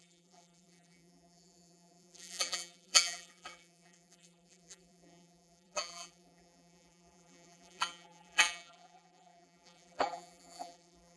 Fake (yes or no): yes